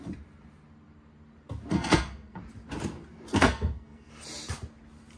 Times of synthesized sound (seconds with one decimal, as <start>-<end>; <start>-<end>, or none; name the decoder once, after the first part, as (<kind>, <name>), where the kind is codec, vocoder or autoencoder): 1.7-2.4 (codec, SNAC); 3.3-4.1